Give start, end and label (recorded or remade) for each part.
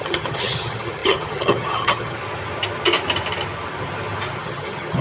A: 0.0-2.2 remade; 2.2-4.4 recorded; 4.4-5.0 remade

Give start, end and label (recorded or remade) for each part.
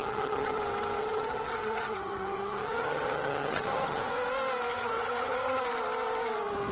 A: 0.0-0.6 remade; 0.6-1.0 recorded; 1.0-4.1 remade; 4.1-4.7 recorded; 4.7-5.6 remade; 5.6-6.7 recorded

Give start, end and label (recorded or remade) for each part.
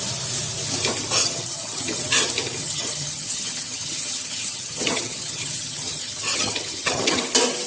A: 0.0-1.2 recorded; 1.2-2.0 remade; 2.0-2.6 recorded; 2.6-7.2 remade; 7.2-7.7 recorded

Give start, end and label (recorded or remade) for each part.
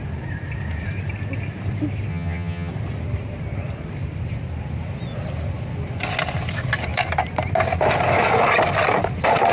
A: 0.0-2.1 recorded; 2.1-2.7 remade; 2.7-9.5 recorded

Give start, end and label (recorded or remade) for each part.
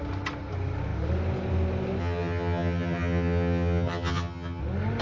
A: 0.0-2.0 recorded; 2.0-4.6 remade; 4.6-5.0 recorded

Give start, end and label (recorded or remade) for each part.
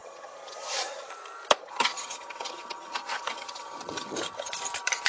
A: 0.0-1.1 remade; 1.1-1.6 recorded; 1.6-4.5 remade; 4.5-5.1 recorded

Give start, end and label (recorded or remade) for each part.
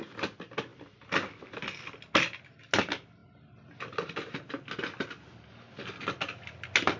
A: 0.0-7.0 recorded